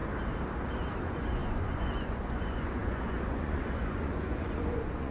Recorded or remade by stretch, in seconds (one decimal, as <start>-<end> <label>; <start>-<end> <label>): 0.0-1.0 recorded; 1.0-5.1 remade